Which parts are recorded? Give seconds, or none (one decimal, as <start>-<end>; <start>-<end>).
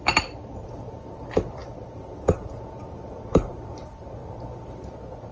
4.2-5.3